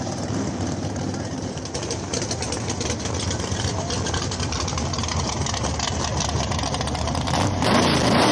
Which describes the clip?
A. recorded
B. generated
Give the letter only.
B